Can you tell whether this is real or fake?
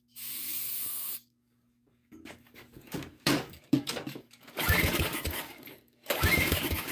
fake